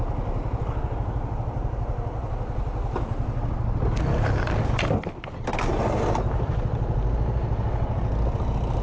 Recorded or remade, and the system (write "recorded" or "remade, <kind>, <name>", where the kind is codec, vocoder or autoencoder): recorded